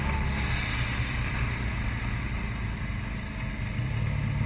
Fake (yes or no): no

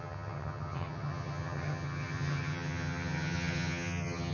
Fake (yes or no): yes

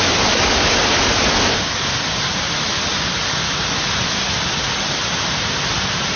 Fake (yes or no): no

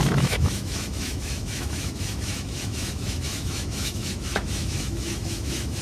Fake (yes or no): yes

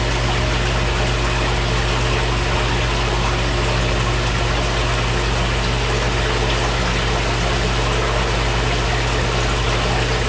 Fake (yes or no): no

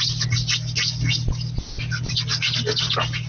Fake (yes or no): no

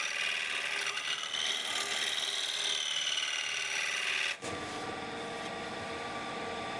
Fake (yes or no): no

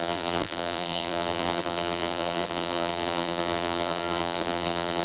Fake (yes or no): yes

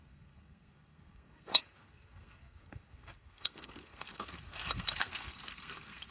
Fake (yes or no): yes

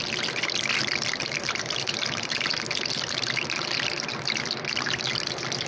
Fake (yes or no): no